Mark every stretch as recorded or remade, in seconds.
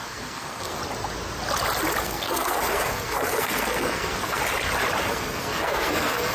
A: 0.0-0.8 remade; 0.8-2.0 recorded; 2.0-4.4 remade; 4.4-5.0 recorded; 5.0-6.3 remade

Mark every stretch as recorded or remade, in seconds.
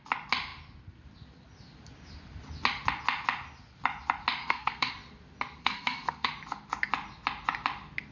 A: 0.0-4.4 recorded; 4.4-4.9 remade; 4.9-5.6 recorded; 5.6-6.3 remade; 6.3-8.1 recorded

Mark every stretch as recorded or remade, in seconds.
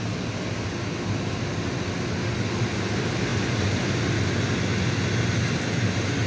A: 0.0-6.3 recorded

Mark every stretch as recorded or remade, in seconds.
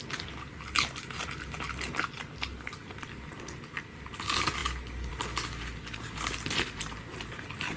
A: 0.0-7.8 recorded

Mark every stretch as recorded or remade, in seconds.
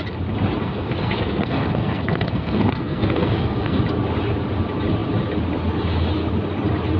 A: 0.0-0.6 recorded; 0.6-3.8 remade; 3.8-7.0 recorded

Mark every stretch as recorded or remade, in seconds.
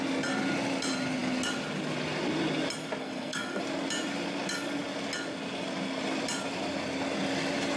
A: 0.0-3.0 recorded; 3.0-3.6 remade; 3.6-7.8 recorded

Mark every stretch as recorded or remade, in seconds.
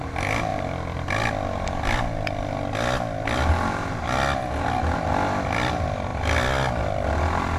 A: 0.0-7.6 recorded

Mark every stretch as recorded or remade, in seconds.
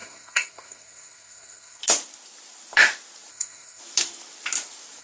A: 0.0-1.8 remade; 1.8-3.3 recorded; 3.3-3.8 remade; 3.8-5.0 recorded